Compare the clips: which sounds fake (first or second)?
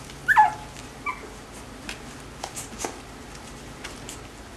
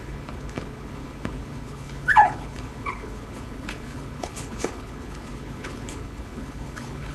second